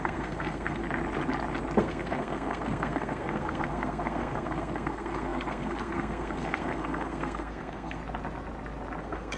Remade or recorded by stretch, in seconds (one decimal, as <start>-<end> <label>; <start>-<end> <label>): 0.0-0.8 remade; 0.8-1.8 recorded; 1.8-8.0 remade; 8.0-9.0 recorded; 9.0-9.4 remade